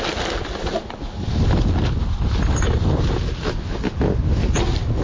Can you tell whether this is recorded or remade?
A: recorded